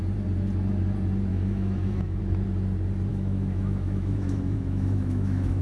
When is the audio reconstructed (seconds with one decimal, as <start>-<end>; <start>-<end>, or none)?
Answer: 1.3-2.2; 3.1-5.6